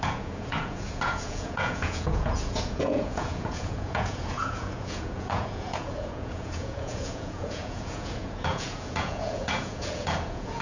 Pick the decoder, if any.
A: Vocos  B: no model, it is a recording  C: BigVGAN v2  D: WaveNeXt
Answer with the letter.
A